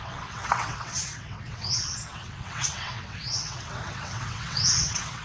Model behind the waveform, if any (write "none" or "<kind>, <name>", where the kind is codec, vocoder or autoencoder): vocoder, WaveNeXt